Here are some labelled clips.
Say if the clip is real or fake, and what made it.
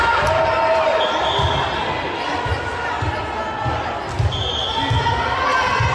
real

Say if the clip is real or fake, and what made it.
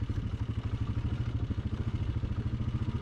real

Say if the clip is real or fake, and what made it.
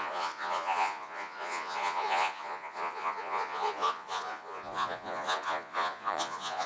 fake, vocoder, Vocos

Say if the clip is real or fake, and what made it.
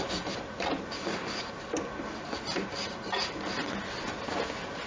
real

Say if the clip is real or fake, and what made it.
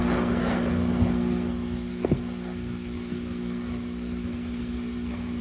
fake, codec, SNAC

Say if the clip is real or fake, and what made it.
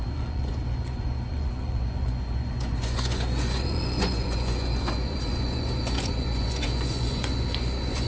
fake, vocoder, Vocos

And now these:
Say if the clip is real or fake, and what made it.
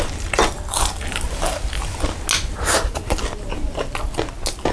real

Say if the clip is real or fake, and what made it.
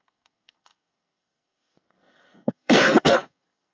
fake, codec, SNAC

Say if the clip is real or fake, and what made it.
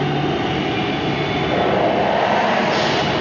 real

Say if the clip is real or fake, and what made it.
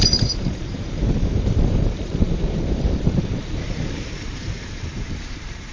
fake, vocoder, BigVGAN v2